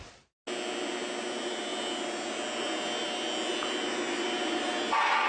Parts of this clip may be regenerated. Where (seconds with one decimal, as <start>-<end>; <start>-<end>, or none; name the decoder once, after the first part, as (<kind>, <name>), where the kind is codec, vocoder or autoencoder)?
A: none